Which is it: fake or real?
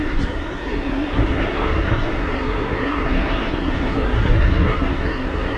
fake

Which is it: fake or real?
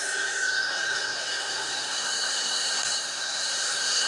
fake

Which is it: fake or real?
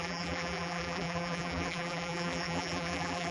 fake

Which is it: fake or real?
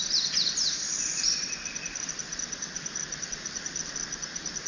real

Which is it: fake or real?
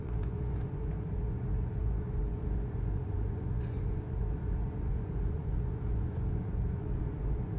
fake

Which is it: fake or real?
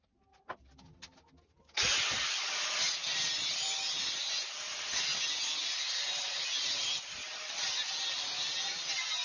real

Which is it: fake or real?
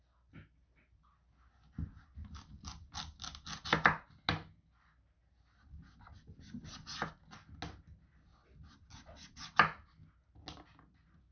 real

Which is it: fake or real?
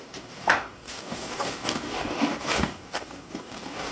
fake